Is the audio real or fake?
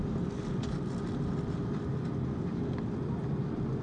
real